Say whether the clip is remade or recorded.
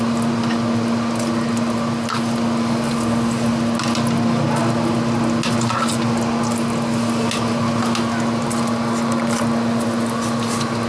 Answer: recorded